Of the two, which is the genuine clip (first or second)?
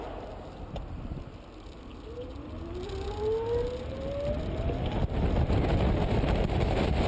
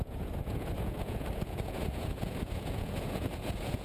first